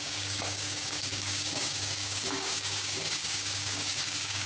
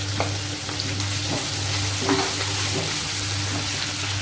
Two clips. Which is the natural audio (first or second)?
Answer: second